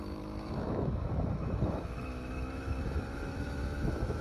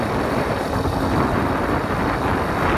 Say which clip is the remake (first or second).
first